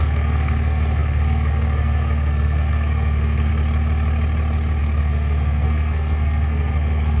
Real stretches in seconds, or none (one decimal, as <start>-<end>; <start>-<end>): 3.5-4.8